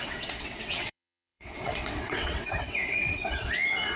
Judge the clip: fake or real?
fake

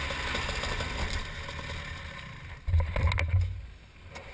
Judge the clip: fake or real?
real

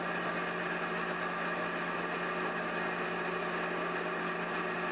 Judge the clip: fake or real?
real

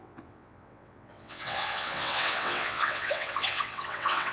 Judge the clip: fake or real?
fake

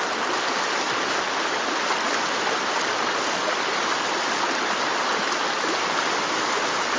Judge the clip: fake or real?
real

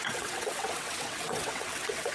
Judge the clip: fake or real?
fake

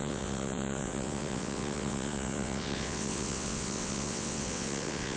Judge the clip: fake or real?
fake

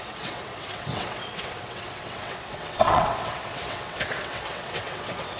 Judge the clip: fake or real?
fake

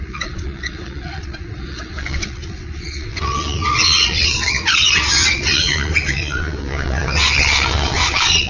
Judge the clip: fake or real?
fake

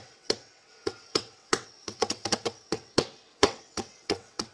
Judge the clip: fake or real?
fake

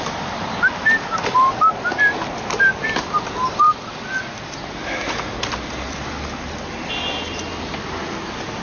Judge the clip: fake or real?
real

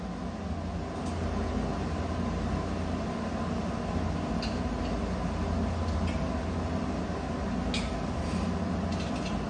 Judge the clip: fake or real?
real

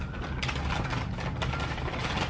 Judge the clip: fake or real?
real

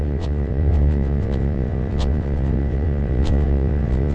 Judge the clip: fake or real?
fake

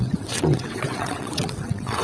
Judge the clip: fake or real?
fake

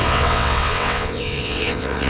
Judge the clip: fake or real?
fake